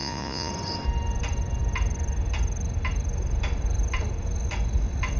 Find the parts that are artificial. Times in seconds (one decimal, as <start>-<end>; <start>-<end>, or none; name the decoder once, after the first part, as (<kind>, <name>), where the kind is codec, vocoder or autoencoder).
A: 0.0-0.5 (vocoder, Vocos)